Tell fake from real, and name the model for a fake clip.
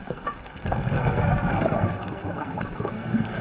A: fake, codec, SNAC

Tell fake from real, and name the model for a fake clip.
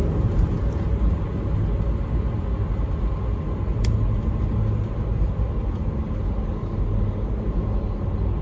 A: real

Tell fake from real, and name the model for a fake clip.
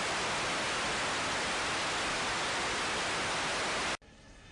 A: real